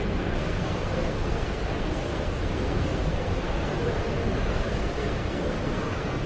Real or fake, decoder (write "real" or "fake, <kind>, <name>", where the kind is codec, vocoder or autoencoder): fake, codec, SNAC